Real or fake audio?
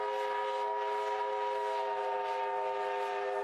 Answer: real